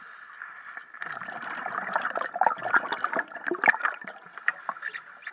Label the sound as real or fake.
real